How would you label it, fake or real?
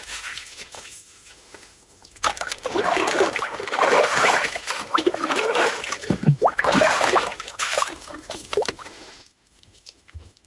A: fake